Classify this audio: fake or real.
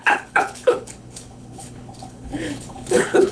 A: fake